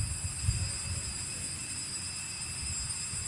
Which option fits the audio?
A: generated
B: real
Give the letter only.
B